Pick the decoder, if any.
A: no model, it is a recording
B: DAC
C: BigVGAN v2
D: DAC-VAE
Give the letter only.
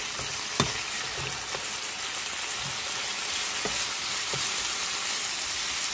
A